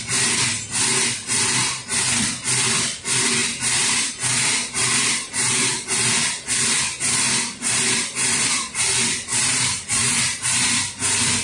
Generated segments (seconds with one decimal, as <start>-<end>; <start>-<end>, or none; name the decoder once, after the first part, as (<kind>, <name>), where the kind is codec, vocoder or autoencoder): 3.4-4.1 (vocoder, BigVGAN v2); 9.3-10.7